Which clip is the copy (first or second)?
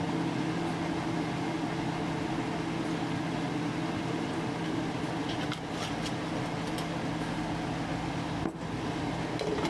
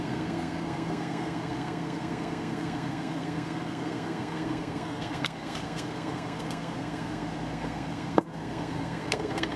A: second